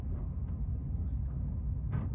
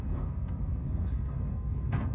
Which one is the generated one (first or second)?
second